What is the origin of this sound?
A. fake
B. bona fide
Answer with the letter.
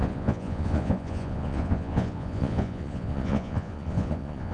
A